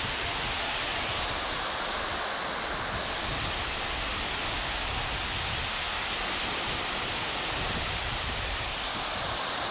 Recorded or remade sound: recorded